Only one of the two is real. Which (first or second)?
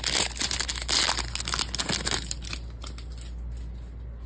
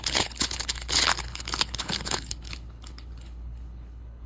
first